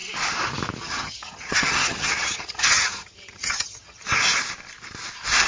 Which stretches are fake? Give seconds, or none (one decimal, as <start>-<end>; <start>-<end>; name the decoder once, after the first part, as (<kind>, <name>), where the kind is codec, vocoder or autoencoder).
0.8-4.0 (vocoder, HiFi-GAN)